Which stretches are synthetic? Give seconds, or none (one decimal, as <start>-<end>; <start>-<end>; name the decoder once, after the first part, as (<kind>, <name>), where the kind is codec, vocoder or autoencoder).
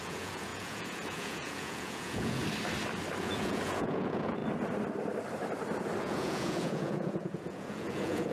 0.0-2.4 (vocoder, Vocos); 3.2-4.4; 6.0-8.3